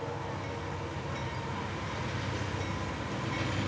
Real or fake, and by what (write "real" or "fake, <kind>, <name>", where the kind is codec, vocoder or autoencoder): real